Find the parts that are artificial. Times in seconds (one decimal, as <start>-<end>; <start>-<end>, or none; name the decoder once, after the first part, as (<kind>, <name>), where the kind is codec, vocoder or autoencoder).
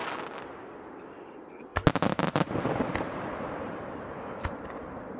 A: none